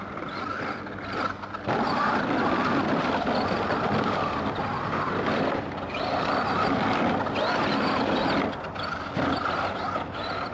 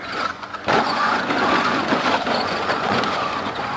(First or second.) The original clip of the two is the first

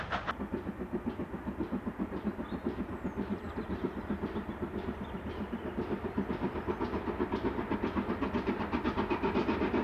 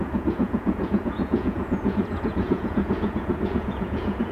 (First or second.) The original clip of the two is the first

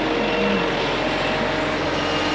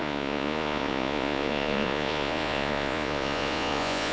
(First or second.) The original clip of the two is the first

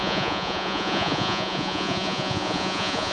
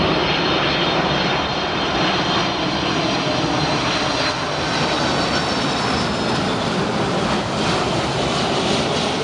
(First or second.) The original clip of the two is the second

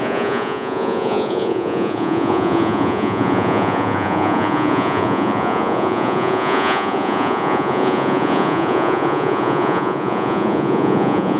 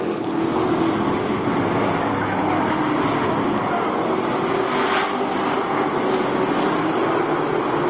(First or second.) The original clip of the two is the second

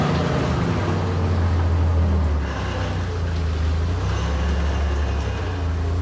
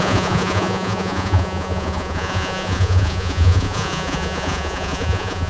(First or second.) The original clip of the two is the first